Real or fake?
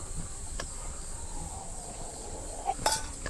fake